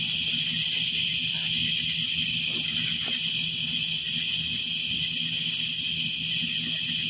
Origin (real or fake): real